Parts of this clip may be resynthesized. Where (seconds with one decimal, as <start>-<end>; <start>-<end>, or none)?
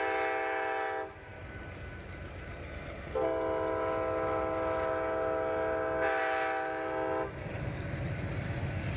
none